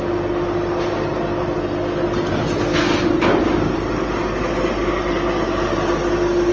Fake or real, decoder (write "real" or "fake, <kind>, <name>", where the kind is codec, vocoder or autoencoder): real